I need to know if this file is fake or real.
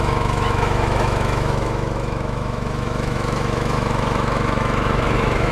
fake